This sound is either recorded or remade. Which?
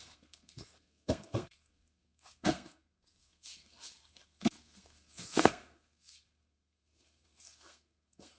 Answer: remade